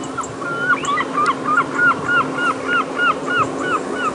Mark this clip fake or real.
real